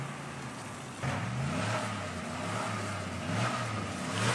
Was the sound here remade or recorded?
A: recorded